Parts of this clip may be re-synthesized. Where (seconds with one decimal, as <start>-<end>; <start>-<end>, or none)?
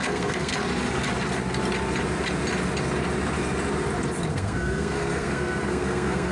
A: 0.0-0.5; 4.3-6.3